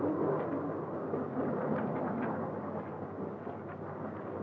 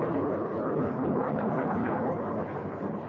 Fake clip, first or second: second